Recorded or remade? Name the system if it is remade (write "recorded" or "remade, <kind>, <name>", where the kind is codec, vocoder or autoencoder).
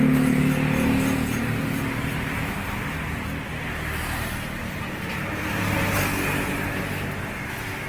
recorded